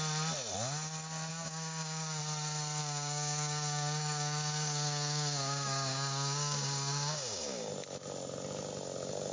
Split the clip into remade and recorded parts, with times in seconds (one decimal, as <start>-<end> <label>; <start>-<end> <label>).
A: 0.0-1.3 recorded; 1.3-2.2 remade; 2.2-2.8 recorded; 2.8-7.7 remade; 7.7-9.3 recorded